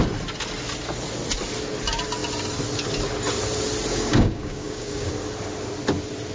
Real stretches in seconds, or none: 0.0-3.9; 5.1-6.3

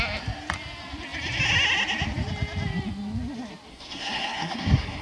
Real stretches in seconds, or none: 0.0-3.7

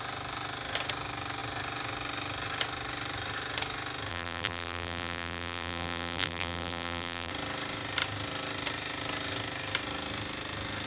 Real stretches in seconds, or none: 0.0-4.1; 7.3-10.9

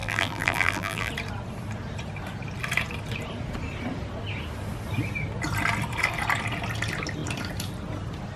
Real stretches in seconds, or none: 1.1-8.4

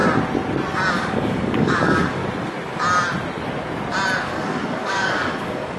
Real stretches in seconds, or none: 0.0-0.9; 2.2-4.2